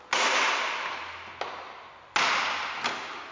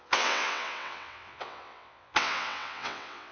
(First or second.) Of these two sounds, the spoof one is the second